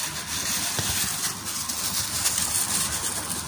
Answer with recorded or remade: recorded